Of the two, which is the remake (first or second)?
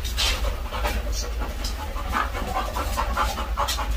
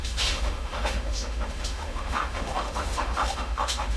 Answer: second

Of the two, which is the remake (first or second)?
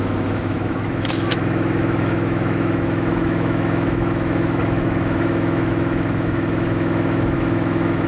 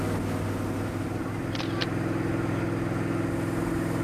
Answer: first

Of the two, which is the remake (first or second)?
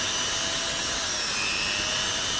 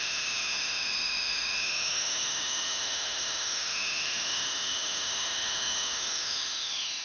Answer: second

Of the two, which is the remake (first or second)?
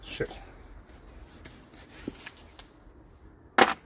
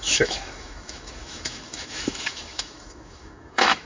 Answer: second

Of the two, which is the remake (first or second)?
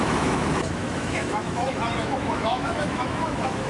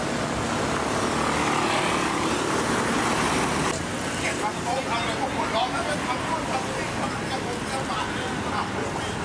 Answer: first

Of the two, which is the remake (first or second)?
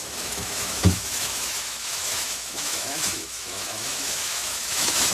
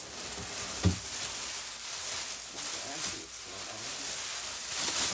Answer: first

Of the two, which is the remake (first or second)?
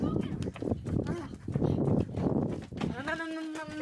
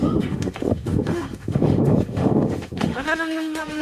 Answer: second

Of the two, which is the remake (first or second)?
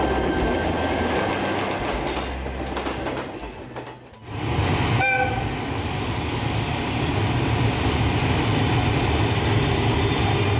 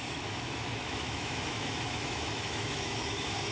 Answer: second